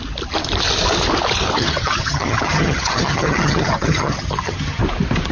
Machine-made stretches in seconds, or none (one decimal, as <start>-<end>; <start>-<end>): 1.6-4.8